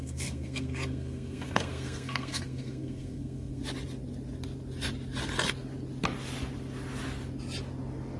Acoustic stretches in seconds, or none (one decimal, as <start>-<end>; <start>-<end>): 3.6-8.2

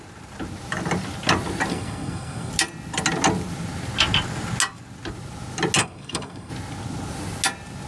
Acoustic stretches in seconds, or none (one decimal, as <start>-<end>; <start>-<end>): 0.0-1.7; 2.5-5.8; 6.5-7.9

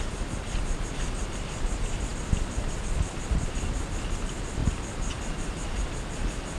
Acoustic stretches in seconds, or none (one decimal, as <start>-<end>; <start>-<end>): 0.0-6.6

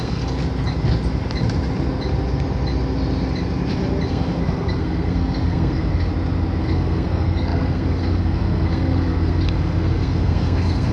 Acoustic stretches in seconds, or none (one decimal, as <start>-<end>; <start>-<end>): 0.4-4.1; 6.1-6.6

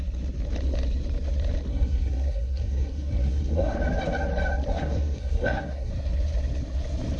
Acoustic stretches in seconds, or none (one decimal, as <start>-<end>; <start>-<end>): 0.0-1.7; 3.8-4.7; 5.9-7.2

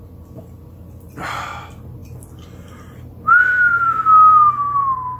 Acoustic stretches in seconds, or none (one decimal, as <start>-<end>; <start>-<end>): 0.0-5.2